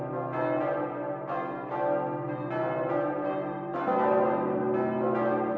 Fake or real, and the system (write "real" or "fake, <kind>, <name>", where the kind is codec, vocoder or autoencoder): real